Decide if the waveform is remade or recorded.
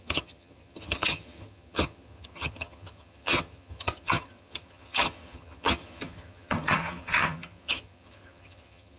remade